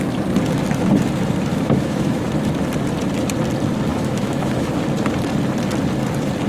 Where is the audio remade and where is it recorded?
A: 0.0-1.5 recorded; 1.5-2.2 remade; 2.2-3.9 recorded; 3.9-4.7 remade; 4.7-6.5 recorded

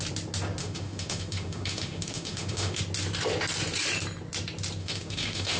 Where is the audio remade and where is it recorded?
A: 0.0-0.6 recorded; 0.6-2.8 remade; 2.8-4.8 recorded; 4.8-5.6 remade

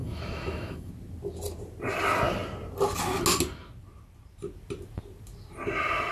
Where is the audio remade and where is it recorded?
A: 0.0-0.9 remade; 0.9-6.1 recorded